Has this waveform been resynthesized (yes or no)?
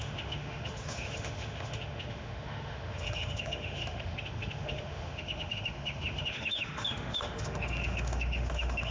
yes